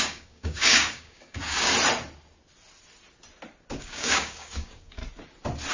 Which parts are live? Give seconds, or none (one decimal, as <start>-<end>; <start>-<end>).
1.7-3.8; 5.0-5.7